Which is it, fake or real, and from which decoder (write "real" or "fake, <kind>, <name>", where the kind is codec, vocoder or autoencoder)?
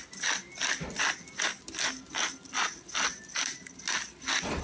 real